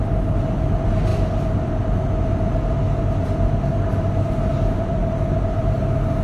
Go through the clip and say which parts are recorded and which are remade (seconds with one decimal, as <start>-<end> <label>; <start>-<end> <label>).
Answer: 0.0-6.2 recorded